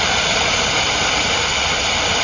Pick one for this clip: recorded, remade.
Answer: recorded